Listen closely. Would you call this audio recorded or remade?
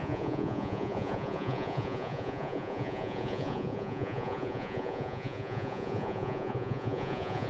remade